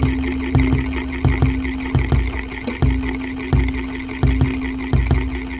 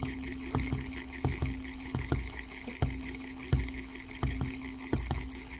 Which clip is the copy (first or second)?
second